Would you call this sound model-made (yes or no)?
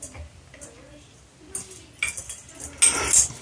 no